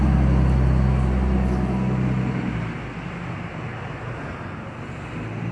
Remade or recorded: recorded